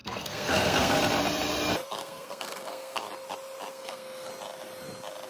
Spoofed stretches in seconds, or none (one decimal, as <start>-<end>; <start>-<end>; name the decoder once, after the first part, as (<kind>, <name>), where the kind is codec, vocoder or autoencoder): 0.0-0.9 (codec, SNAC); 2.0-3.0; 3.7-4.3

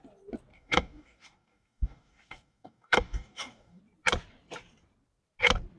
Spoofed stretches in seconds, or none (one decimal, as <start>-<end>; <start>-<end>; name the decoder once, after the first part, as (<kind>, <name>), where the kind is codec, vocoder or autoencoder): 0.5-3.8 (codec, DAC)